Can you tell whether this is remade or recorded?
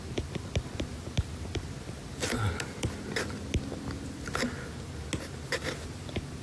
recorded